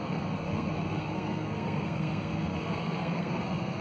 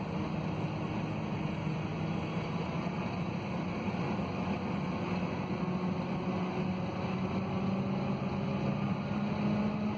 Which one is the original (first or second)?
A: second